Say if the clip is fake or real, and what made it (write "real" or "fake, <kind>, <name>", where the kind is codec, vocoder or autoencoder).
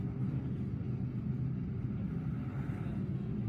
real